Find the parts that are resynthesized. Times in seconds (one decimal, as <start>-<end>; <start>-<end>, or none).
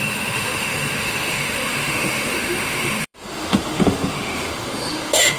0.0-5.4